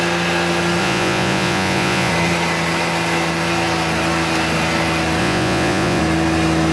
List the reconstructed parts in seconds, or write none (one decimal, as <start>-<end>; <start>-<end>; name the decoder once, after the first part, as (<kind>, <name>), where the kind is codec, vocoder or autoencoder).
0.8-2.1 (vocoder, Vocos); 5.2-6.0